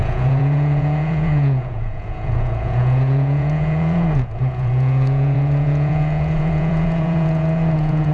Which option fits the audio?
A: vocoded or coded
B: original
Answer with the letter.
A